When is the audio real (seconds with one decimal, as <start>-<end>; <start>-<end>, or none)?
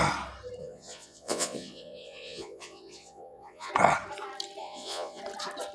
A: 0.0-0.6; 3.7-4.6; 5.2-5.7